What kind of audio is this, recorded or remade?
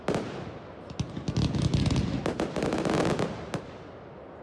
recorded